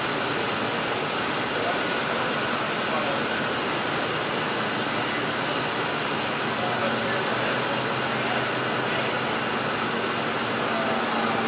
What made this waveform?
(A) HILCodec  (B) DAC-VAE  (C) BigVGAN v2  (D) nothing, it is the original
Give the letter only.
D